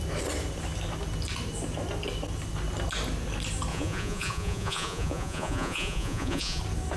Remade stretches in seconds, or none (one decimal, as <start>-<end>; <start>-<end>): 3.7-6.6